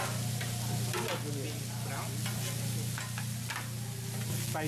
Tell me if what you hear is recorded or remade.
recorded